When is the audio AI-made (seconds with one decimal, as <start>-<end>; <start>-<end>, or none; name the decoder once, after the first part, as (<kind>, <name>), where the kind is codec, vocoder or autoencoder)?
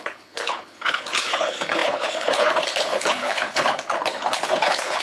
0.0-5.0 (codec, HILCodec)